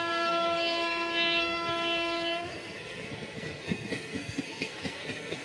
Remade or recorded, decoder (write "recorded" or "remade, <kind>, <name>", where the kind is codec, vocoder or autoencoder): remade, codec, SNAC